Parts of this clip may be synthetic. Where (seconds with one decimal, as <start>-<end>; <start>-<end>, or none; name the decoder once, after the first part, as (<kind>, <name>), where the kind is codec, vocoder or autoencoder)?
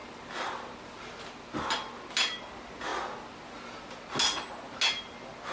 none